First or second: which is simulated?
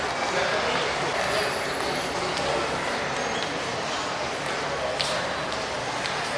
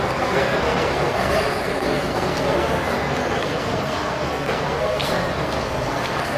second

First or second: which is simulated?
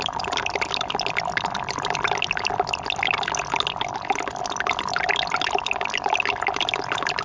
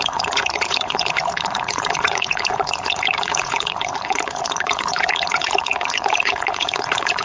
second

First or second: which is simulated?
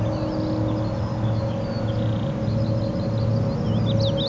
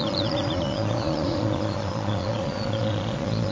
second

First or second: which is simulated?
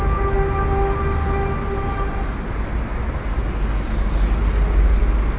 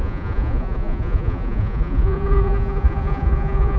second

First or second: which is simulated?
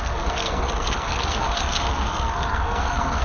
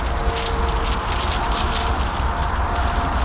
first